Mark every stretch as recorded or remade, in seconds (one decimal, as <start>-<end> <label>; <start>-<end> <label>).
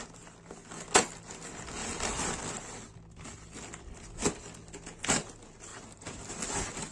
0.0-6.9 recorded